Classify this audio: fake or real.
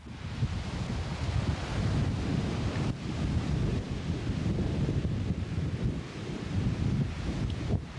fake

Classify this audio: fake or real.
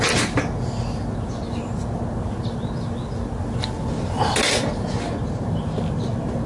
real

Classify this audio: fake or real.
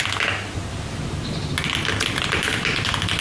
real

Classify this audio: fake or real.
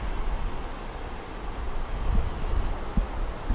real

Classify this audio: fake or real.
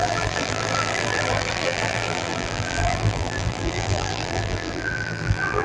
fake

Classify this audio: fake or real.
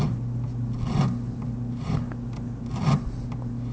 real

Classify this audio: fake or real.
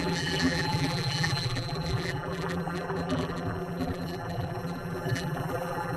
fake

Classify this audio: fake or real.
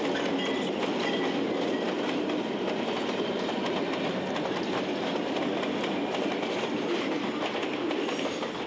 real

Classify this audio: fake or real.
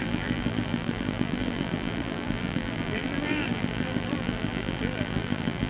fake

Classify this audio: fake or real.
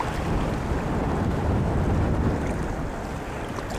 real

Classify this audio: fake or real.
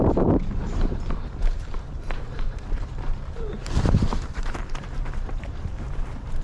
fake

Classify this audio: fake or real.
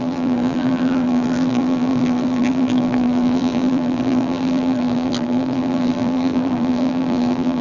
fake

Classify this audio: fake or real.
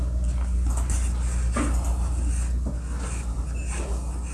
real